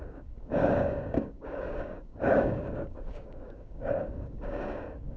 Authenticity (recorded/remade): remade